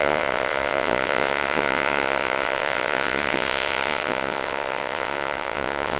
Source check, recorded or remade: remade